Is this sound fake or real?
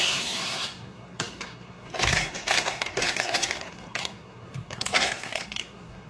fake